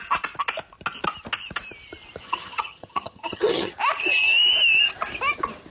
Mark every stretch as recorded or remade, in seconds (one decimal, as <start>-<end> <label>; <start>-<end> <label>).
0.0-2.2 recorded; 2.2-3.7 remade; 3.7-5.7 recorded